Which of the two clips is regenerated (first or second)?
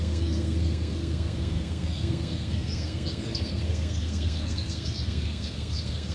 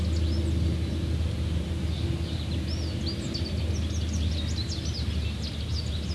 first